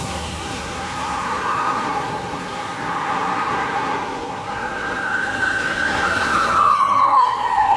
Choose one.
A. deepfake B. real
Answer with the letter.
A